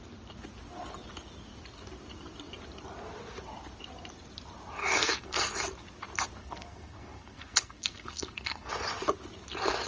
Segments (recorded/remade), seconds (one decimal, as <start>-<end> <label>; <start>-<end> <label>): 0.0-4.8 recorded; 4.8-5.5 remade; 5.5-6.4 recorded; 6.4-8.7 remade; 8.7-9.9 recorded